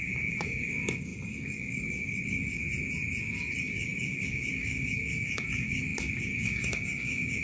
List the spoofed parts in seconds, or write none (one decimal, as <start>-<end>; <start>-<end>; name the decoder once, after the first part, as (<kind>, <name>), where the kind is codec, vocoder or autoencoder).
0.0-2.6 (codec, DAC); 3.2-7.4